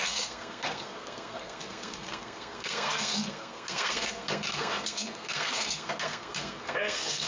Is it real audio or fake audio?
fake